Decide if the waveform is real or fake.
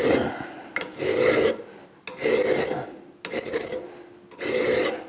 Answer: real